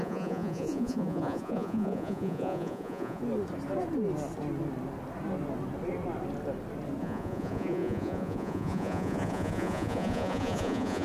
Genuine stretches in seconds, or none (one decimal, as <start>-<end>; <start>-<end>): 3.2-7.0